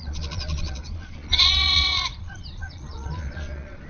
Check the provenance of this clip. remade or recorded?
remade